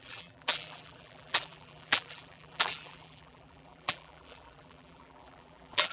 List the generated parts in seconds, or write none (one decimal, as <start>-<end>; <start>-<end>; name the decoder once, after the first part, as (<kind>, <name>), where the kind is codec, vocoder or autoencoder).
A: 0.0-5.9 (vocoder, BigVGAN v2)